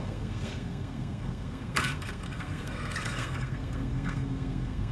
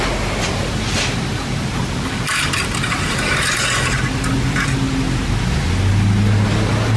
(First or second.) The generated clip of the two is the first